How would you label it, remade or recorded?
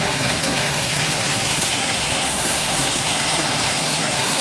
remade